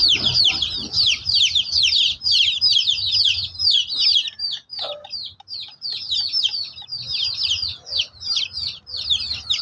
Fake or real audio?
real